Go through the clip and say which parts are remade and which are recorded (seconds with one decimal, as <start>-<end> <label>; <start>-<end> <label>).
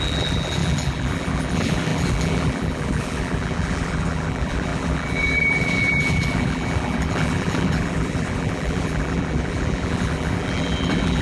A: 0.0-11.2 remade